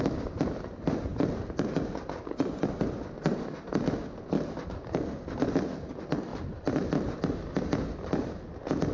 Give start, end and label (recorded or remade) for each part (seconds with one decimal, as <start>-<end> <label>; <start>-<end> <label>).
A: 0.0-6.3 recorded; 6.3-6.9 remade; 6.9-8.9 recorded